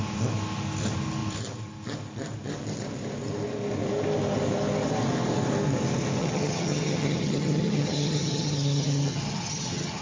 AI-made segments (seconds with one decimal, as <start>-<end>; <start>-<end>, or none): 6.2-10.0